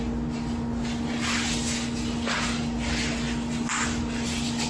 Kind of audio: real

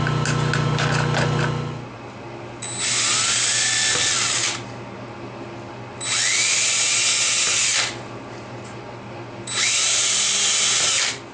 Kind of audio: real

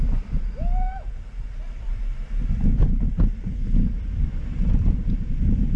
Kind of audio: real